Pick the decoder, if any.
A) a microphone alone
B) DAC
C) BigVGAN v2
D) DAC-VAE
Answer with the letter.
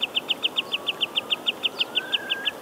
A